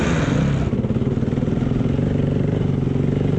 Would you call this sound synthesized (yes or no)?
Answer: no